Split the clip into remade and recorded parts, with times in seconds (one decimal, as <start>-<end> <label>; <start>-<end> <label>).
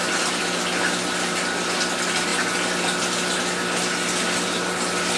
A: 0.0-5.2 recorded